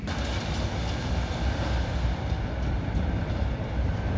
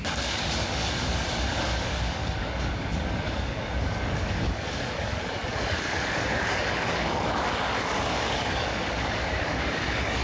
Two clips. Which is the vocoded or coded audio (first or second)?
second